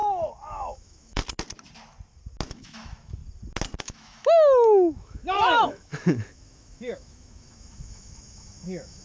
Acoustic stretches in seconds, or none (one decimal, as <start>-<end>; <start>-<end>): 0.0-0.5; 1.2-2.5; 3.2-3.8